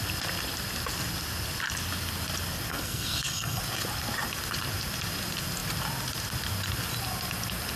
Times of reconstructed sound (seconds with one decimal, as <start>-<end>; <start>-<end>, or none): 2.7-3.6